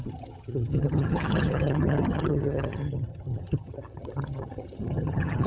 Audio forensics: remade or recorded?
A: remade